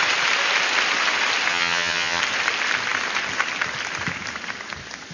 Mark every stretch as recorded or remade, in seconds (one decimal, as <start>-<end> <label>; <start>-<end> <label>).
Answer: 0.0-1.5 recorded; 1.5-2.2 remade; 2.2-5.1 recorded